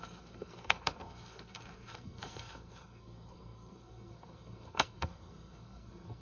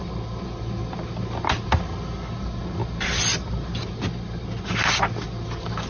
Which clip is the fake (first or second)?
first